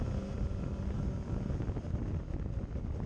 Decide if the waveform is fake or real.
real